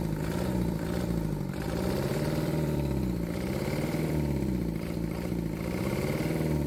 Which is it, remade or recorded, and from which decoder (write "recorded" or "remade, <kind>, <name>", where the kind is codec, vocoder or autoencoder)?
remade, vocoder, BigVGAN v2